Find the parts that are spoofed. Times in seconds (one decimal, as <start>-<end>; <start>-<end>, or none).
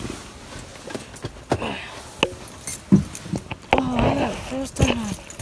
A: none